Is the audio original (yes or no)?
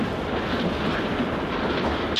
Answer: yes